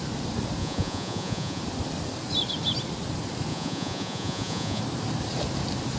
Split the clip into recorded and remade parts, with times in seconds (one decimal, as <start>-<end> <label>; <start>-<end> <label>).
0.0-0.6 recorded; 0.6-1.6 remade; 1.6-3.5 recorded; 3.5-4.8 remade; 4.8-6.0 recorded